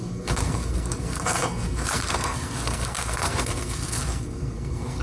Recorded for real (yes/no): no